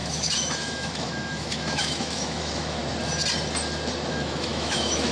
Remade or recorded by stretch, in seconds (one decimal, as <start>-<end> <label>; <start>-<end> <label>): 0.0-2.8 remade; 2.8-4.1 recorded; 4.1-5.1 remade